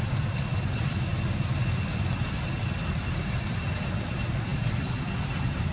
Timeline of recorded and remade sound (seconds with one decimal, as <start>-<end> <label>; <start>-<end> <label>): 0.0-5.7 recorded